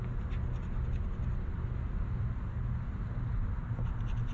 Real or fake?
real